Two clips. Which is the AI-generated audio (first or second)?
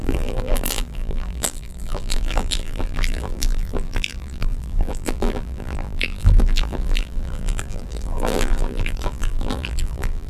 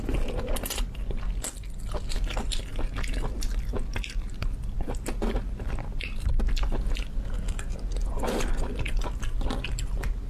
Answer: first